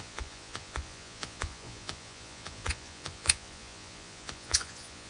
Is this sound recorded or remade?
remade